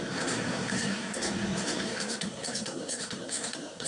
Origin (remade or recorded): remade